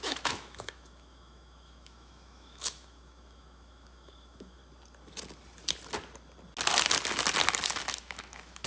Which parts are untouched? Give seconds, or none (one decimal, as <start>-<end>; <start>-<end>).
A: 4.6-8.0